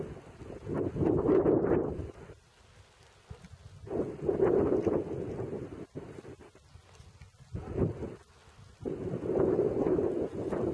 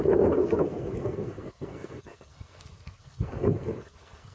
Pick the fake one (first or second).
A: second